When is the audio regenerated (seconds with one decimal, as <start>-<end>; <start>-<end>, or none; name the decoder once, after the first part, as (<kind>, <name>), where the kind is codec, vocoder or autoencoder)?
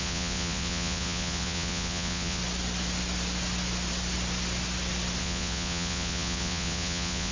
0.0-2.4 (vocoder, Vocos); 5.2-7.3